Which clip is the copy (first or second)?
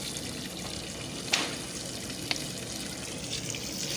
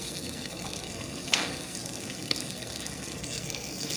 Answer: second